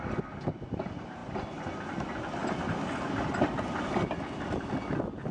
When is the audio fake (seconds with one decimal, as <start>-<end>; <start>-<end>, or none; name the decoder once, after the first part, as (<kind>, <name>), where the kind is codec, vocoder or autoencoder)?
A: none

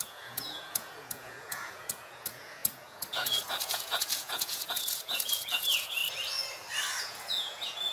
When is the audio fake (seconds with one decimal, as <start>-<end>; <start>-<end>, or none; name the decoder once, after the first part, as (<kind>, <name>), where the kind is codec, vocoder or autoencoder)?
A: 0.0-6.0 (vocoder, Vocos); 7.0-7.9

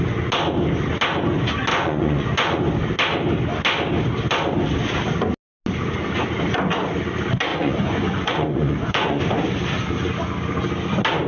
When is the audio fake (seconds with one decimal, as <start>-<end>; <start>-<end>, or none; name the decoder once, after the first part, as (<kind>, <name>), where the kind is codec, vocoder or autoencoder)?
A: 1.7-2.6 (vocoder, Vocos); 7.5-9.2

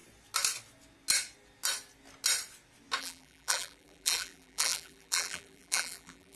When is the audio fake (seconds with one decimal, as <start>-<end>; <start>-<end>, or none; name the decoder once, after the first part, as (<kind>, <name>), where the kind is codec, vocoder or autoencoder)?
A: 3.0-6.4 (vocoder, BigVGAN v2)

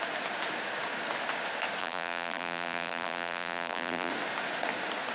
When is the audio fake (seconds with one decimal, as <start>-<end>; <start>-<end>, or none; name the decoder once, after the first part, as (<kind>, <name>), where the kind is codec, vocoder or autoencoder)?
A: 1.8-4.1 (vocoder, BigVGAN v2)

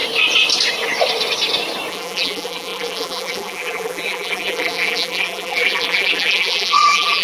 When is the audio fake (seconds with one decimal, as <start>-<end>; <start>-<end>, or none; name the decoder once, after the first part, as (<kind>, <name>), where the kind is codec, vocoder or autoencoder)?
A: 1.9-7.2 (vocoder, BigVGAN v2)

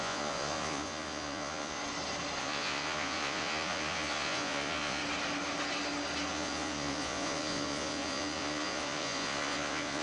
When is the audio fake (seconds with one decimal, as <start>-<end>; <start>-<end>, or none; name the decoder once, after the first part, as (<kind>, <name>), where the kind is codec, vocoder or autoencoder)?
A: 0.0-1.8 (vocoder, Vocos); 2.4-5.0; 6.3-10.0